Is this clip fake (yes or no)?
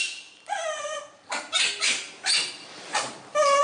no